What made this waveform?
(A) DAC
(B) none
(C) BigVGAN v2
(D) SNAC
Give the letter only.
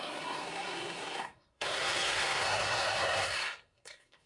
D